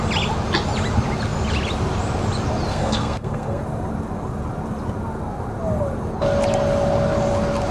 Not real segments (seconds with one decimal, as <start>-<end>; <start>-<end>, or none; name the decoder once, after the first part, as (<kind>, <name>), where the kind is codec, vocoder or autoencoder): 2.7-3.6 (codec, SNAC)